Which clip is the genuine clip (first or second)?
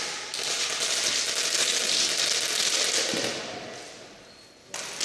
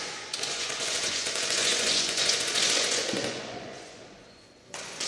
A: first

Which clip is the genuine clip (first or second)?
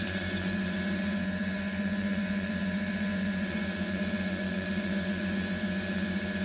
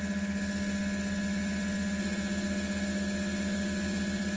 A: second